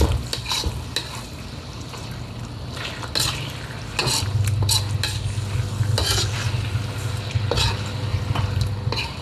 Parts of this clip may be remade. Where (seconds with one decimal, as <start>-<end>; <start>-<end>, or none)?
none